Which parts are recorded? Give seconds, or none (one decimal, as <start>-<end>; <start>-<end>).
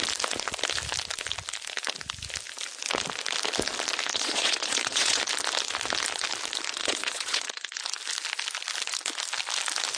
0.0-4.1; 5.2-6.8; 7.8-10.0